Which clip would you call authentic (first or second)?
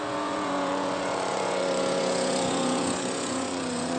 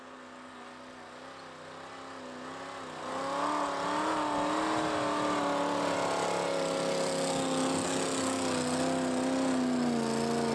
second